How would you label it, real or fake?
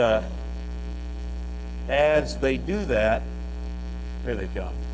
fake